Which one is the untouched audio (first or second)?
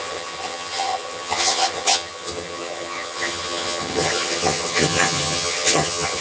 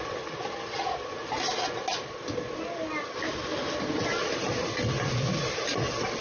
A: second